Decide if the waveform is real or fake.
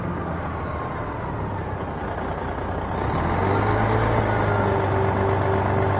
real